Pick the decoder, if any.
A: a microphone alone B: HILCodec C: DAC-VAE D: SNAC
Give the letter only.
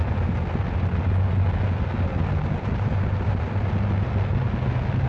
A